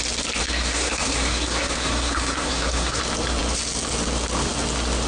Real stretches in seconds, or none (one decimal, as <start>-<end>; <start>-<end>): 0.0-0.4; 3.0-5.1